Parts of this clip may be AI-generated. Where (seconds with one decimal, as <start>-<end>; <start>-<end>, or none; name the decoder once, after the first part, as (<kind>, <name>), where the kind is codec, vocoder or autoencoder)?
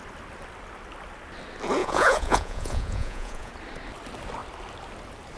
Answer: 1.8-3.5 (vocoder, Vocos)